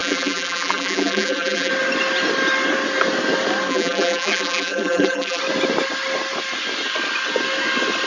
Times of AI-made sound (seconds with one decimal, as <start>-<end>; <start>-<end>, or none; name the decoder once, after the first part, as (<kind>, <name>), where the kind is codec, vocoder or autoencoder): 0.0-1.7 (vocoder, BigVGAN v2); 3.7-5.4